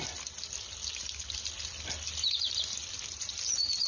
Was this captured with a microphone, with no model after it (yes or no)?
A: yes